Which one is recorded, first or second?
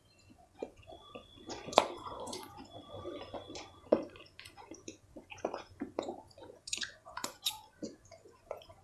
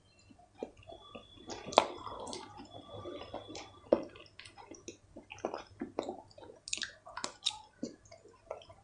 second